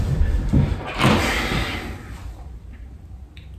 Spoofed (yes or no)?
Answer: no